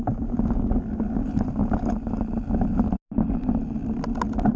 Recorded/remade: recorded